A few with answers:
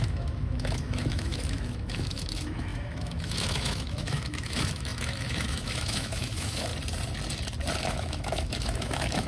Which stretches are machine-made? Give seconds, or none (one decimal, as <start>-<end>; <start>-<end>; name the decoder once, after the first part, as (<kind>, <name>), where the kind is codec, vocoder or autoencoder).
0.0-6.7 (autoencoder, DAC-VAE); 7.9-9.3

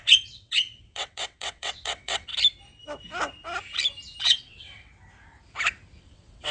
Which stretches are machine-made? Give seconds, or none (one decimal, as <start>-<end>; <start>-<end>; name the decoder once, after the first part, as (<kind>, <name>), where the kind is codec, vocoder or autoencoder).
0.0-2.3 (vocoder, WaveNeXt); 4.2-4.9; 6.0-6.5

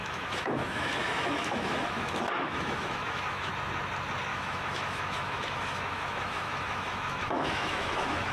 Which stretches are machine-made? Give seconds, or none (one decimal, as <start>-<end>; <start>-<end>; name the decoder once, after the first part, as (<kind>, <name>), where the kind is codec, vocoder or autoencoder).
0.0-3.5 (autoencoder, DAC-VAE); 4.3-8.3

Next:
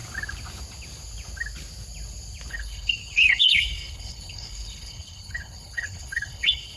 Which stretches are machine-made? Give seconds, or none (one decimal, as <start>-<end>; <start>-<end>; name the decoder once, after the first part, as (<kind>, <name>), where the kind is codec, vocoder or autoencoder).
2.5-6.8 (codec, HILCodec)

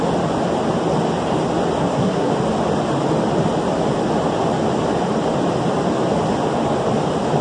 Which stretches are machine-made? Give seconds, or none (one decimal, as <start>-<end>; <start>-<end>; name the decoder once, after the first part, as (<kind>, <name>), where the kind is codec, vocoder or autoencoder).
1.8-2.3 (codec, SNAC)